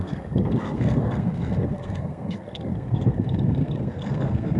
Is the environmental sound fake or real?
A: fake